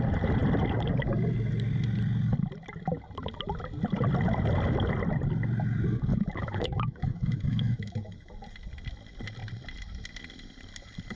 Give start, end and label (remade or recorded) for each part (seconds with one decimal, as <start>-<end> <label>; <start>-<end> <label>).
0.0-6.1 recorded; 6.1-8.3 remade; 8.3-11.2 recorded